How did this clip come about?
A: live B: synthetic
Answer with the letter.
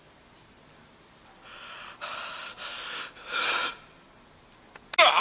A